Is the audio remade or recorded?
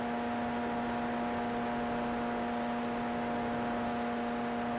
recorded